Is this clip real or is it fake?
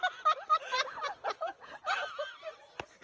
real